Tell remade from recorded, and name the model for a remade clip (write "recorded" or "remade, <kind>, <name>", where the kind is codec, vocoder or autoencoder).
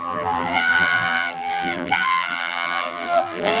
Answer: remade, vocoder, BigVGAN v2